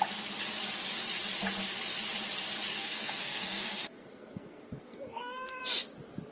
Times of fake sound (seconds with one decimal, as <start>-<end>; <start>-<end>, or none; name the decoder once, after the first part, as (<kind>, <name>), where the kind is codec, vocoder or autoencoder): 2.7-5.6 (codec, SNAC)